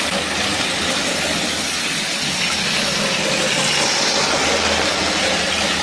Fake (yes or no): no